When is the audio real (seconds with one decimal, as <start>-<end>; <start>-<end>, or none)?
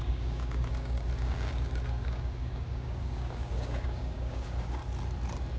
4.8-5.6